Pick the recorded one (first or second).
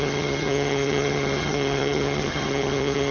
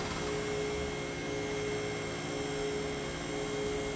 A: second